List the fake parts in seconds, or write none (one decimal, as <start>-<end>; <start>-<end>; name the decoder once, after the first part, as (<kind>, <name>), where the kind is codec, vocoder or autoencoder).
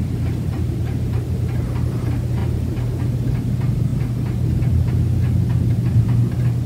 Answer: 0.0-0.8 (vocoder, BigVGAN v2)